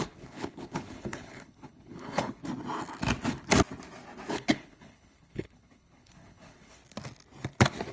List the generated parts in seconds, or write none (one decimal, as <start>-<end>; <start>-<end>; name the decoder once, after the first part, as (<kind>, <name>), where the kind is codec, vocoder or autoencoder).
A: 0.0-2.4 (codec, HILCodec); 4.3-6.8